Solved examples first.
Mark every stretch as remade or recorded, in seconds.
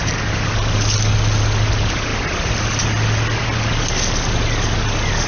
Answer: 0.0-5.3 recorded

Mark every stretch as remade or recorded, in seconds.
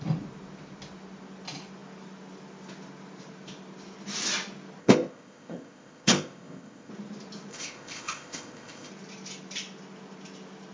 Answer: 0.0-4.8 recorded; 4.8-6.9 remade; 6.9-7.5 recorded; 7.5-8.9 remade; 8.9-10.7 recorded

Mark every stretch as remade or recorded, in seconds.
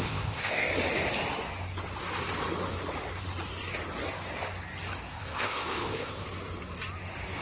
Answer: 0.0-0.7 remade; 0.7-5.1 recorded; 5.1-6.2 remade; 6.2-7.4 recorded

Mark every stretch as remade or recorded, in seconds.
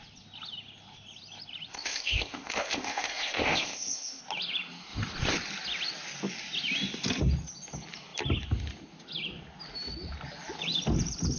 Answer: 0.0-1.7 recorded; 1.7-4.2 remade; 4.2-11.4 recorded